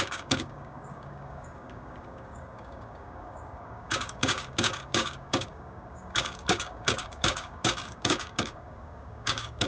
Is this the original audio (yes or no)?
no